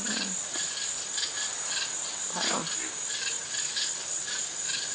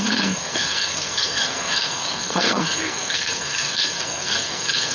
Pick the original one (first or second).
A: first